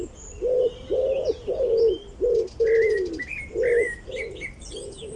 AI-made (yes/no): no